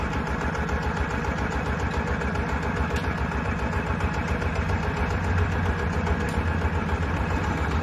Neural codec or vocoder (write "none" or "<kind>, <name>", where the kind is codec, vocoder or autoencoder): none